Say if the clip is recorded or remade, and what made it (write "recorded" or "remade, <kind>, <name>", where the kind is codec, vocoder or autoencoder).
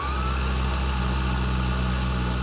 recorded